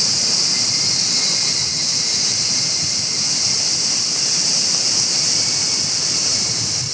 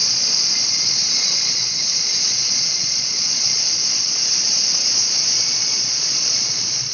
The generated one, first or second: second